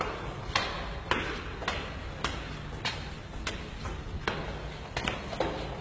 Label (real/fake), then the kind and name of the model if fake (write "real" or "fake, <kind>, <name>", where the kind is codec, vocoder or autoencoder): real